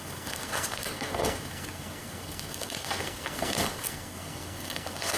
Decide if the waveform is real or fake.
fake